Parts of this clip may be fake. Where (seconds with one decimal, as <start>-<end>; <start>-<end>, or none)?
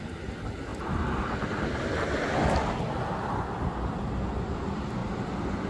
none